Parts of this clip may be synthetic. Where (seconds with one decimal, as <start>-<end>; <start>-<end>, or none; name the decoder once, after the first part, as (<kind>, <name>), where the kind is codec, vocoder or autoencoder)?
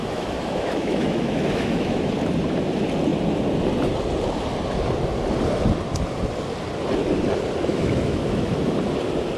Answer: 0.0-2.1 (autoencoder, DAC-VAE); 7.7-8.5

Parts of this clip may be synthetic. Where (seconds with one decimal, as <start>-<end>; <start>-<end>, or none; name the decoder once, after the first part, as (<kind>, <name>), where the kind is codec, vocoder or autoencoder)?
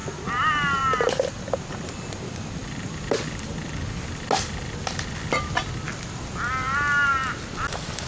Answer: none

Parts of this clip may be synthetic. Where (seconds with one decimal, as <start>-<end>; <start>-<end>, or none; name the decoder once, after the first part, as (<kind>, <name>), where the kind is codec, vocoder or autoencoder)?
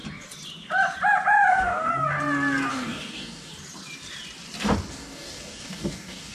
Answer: 1.5-1.9 (codec, DAC); 2.7-3.5; 4.9-6.3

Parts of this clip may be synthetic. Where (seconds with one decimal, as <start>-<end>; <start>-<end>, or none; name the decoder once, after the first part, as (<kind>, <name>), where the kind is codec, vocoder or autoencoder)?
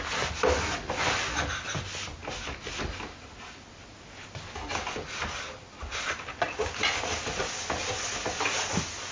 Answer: none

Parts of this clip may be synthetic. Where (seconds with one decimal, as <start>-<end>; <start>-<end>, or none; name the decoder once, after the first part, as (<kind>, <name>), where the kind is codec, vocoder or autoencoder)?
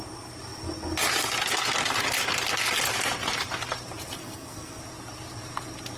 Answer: 4.2-4.8 (codec, SNAC)